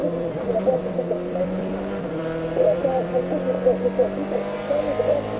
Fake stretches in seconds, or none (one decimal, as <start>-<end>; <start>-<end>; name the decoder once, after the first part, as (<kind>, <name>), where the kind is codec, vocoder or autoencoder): 0.0-3.2 (vocoder, BigVGAN v2)